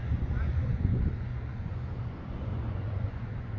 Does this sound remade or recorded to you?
remade